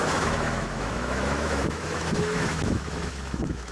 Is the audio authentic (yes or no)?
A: no